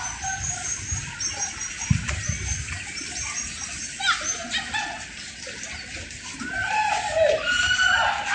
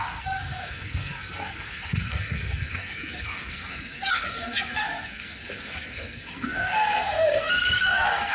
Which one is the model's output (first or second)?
second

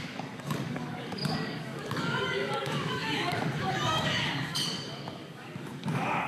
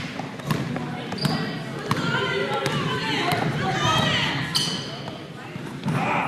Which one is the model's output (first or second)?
first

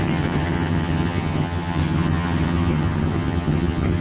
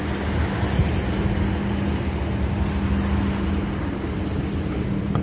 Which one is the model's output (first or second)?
first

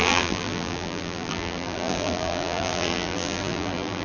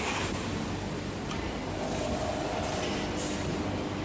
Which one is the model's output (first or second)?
first